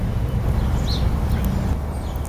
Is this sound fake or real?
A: real